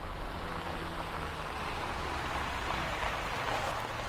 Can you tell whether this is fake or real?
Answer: real